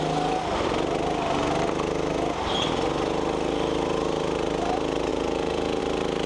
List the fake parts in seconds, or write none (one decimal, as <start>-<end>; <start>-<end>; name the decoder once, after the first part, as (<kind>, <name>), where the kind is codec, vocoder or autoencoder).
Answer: 5.1-5.8 (vocoder, Vocos)